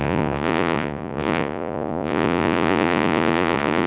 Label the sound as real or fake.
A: fake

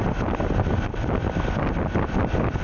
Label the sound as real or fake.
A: real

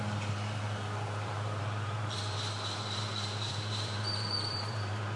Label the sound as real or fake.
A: fake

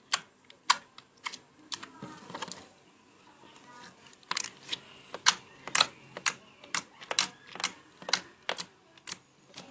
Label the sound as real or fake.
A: real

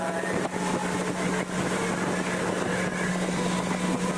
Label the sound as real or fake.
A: real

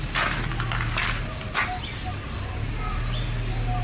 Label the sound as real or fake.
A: real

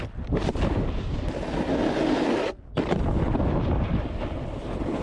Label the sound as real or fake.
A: real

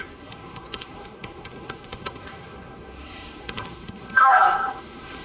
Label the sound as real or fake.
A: fake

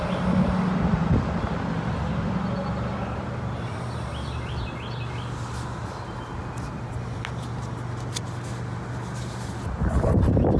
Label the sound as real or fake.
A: real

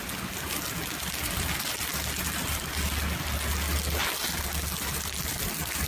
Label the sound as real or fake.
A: real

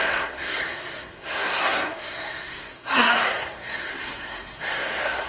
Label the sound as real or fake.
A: fake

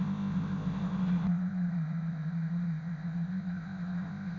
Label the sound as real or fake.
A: fake